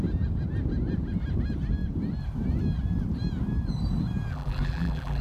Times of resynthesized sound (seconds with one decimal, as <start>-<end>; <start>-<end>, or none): 4.3-5.2

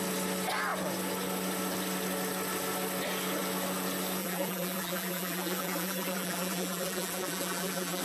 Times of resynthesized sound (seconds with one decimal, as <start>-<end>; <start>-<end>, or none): 4.2-8.0

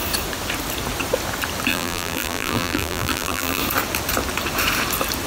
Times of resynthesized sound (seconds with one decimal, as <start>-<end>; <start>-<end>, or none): 1.7-3.6

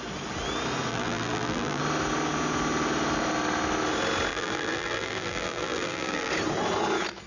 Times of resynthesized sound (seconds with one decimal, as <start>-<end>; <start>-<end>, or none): 0.9-1.8; 4.3-6.3

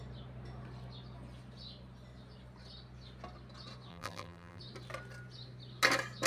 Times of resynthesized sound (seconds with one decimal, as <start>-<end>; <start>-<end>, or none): 3.9-4.6

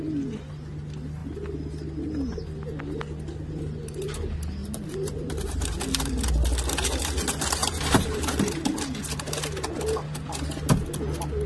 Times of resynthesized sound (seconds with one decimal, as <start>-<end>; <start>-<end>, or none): 4.6-6.3; 7.6-8.5

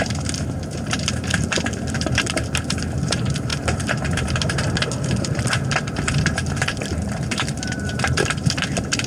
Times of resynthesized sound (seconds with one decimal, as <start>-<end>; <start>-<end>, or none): 0.0-9.1

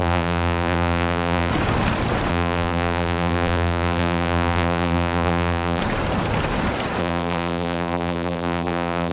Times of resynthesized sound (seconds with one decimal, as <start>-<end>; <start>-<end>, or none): 0.0-1.5; 2.3-5.8; 7.0-9.1